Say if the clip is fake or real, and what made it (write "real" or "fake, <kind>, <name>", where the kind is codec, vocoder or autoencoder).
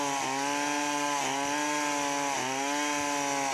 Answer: real